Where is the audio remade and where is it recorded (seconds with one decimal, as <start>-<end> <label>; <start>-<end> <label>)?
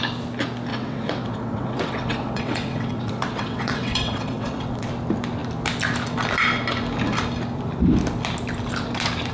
0.0-0.7 recorded; 0.7-4.9 remade; 4.9-9.3 recorded